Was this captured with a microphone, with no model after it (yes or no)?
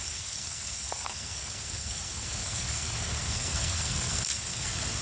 no